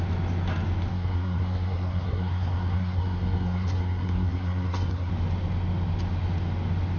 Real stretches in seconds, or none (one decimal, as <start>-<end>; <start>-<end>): 0.0-0.9; 5.1-7.0